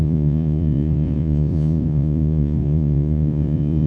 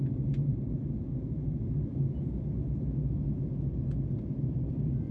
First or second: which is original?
second